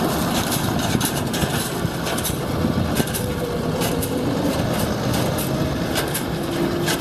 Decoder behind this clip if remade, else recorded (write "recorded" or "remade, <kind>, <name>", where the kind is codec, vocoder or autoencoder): recorded